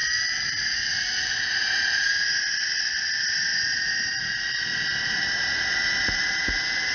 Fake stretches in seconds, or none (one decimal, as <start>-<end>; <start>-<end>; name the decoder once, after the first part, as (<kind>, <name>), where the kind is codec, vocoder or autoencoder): none